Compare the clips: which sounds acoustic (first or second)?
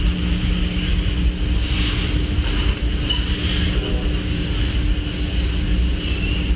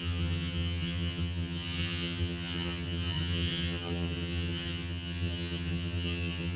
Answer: first